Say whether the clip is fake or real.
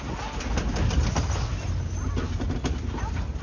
real